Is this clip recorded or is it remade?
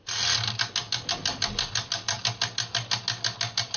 recorded